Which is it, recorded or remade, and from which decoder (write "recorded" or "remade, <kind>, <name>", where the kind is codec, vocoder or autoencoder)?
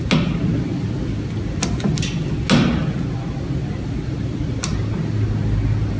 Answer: recorded